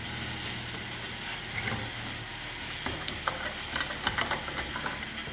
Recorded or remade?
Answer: recorded